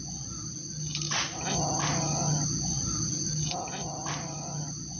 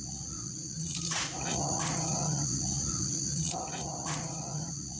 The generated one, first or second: second